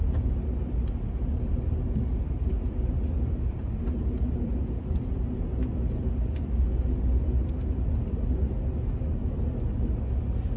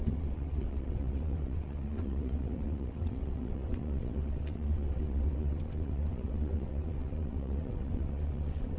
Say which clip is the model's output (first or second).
second